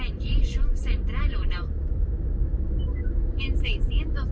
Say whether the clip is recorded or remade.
remade